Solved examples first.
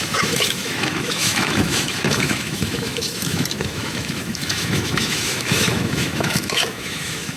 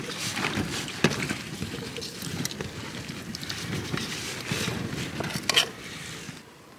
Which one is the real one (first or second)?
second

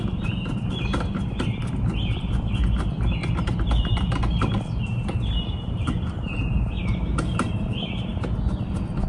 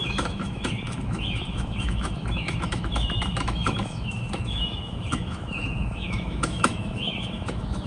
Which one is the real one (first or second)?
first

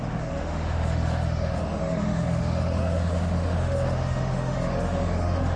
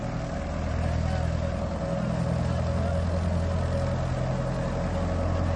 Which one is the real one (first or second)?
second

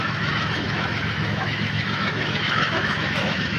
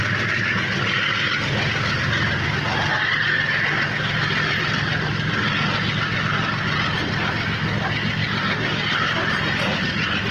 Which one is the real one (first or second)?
second